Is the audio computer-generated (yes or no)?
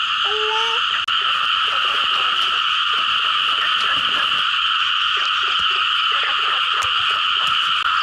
no